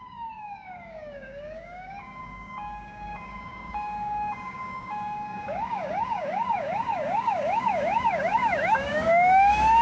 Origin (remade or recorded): remade